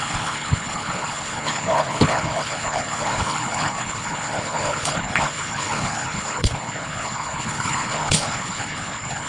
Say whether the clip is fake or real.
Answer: fake